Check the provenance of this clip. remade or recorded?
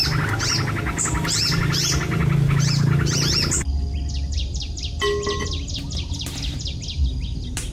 recorded